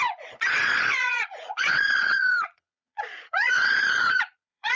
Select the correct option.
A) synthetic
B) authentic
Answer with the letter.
A